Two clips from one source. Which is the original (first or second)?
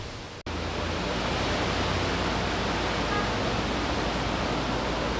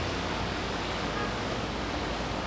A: first